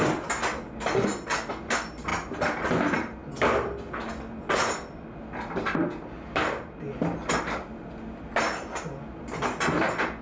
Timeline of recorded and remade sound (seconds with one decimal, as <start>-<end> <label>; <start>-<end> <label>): 0.0-10.2 recorded